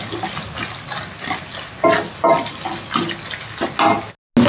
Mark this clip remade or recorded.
recorded